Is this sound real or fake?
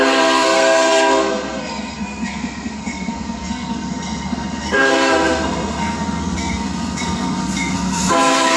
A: fake